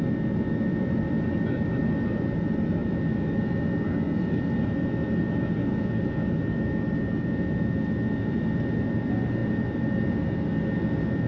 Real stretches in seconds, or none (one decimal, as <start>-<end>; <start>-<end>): 0.0-9.4; 10.0-11.3